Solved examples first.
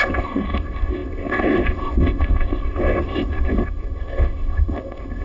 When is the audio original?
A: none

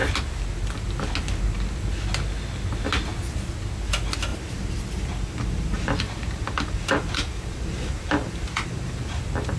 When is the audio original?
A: 0.0-4.3; 9.2-9.6

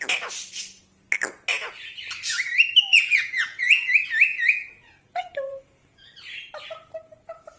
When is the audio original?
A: 0.0-1.5; 2.0-2.9; 3.9-4.3; 6.2-7.6

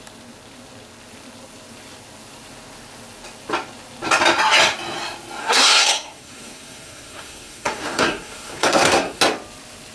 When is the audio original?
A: 0.0-5.4; 9.2-9.9

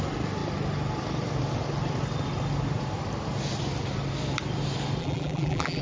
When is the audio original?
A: 0.0-5.0